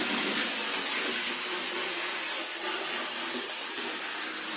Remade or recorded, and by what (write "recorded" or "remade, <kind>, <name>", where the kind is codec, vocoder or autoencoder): recorded